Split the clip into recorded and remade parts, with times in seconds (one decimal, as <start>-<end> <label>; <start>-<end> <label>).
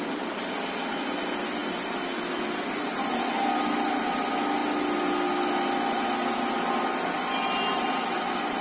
0.0-8.6 recorded